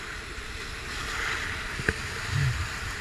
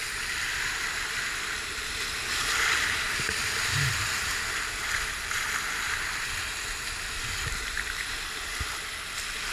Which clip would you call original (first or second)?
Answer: first